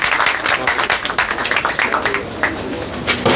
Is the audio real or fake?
real